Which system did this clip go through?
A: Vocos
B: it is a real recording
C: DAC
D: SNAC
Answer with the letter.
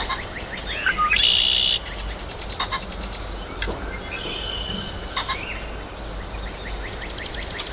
B